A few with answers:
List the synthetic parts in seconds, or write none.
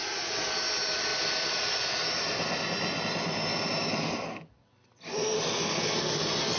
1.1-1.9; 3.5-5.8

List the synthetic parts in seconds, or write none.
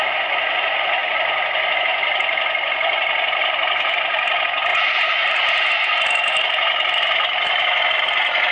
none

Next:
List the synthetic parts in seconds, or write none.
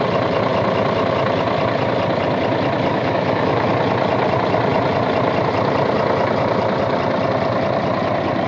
2.9-3.7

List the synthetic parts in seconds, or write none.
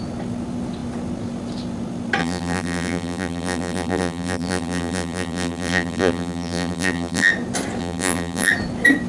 2.2-7.3; 7.8-8.5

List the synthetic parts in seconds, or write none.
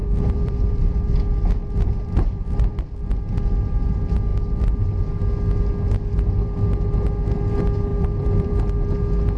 0.0-2.8; 7.9-8.5